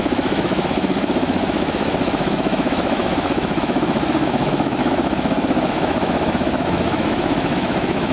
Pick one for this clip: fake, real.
fake